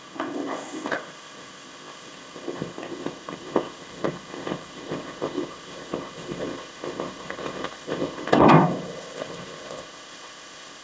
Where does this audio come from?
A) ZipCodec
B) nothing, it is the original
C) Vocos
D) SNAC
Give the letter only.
A